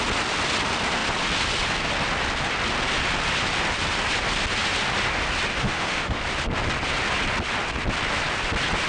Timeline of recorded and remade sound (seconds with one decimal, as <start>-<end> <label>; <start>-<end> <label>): 0.0-5.5 recorded; 5.5-6.2 remade; 6.2-8.9 recorded